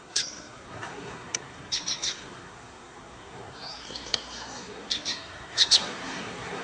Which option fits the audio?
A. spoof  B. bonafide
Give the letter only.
A